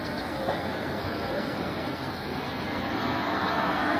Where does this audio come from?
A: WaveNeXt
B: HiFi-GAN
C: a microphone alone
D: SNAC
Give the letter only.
D